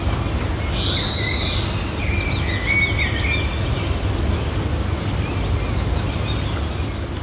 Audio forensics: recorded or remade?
recorded